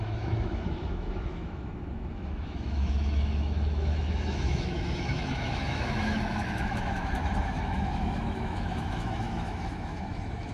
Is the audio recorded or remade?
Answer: remade